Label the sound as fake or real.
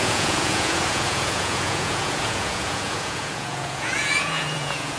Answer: fake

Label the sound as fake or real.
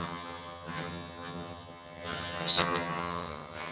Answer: fake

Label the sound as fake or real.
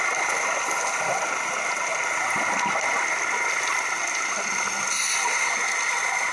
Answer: real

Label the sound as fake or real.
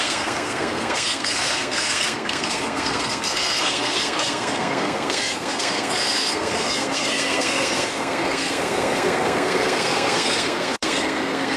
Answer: fake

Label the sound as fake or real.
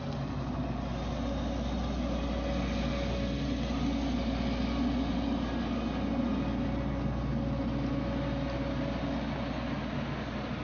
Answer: real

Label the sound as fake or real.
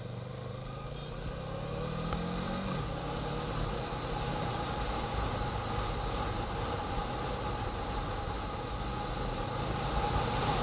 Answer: real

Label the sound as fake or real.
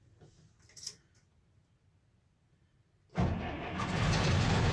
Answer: real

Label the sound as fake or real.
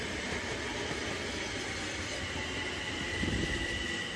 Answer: real